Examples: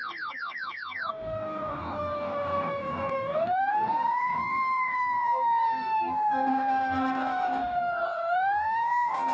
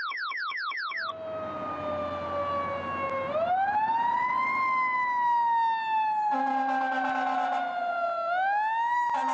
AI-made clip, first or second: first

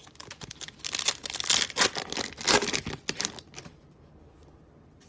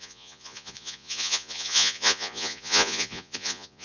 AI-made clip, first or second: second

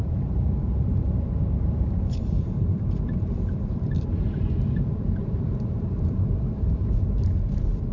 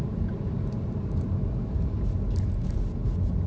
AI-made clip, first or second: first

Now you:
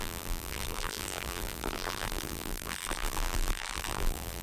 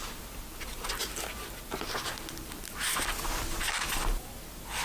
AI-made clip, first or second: first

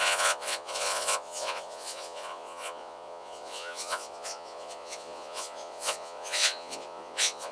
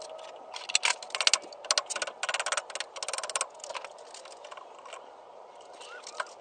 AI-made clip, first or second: first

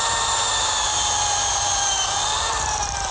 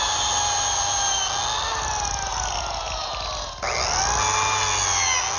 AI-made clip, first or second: first